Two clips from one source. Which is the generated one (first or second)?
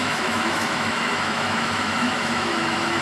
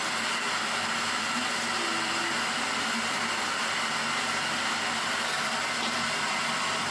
first